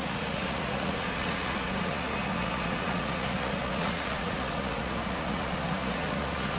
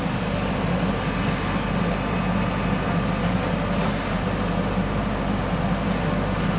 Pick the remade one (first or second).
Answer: first